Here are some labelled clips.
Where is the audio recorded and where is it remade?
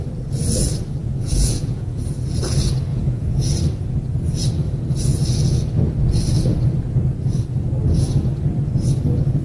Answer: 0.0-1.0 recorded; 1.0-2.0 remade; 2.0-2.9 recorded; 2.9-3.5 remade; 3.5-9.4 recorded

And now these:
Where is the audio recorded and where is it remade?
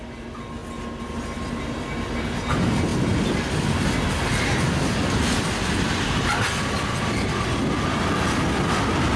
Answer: 0.0-9.2 recorded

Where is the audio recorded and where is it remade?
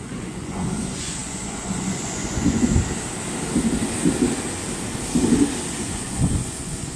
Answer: 0.0-2.7 remade; 2.7-5.8 recorded; 5.8-7.0 remade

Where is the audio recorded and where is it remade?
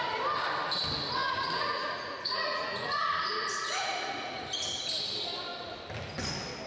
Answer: 0.0-1.2 recorded; 1.2-4.5 remade; 4.5-6.7 recorded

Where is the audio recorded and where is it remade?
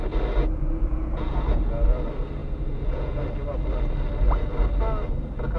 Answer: 0.0-0.4 recorded; 0.4-1.7 remade; 1.7-2.4 recorded; 2.4-3.2 remade; 3.2-5.6 recorded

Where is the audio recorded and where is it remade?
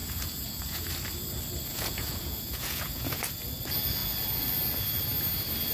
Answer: 0.0-0.9 remade; 0.9-1.7 recorded; 1.7-3.2 remade; 3.2-5.7 recorded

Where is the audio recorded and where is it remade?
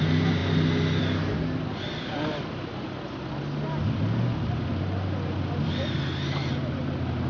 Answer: 0.0-7.3 recorded